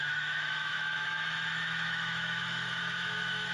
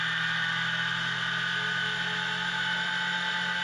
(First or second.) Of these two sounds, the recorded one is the second